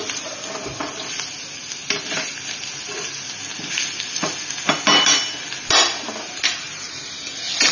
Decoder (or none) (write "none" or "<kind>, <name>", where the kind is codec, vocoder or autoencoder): none